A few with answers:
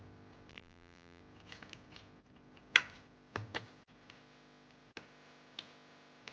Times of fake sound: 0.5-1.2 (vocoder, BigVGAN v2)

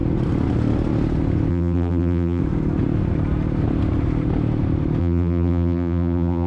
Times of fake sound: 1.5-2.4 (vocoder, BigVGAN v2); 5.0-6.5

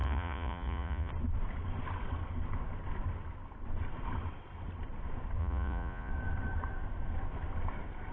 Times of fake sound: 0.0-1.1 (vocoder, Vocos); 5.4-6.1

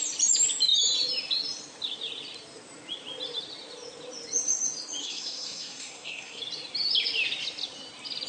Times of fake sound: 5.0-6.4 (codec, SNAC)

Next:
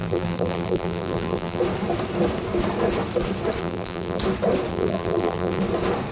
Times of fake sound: 0.0-1.6 (vocoder, BigVGAN v2); 3.6-4.2; 4.7-5.6